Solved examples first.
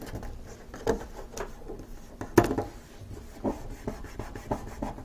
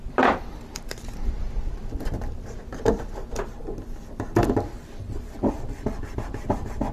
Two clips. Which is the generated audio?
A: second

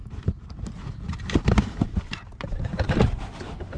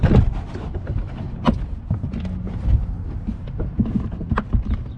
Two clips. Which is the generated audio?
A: first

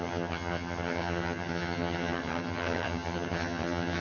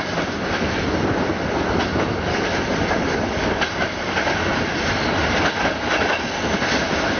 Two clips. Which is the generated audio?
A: first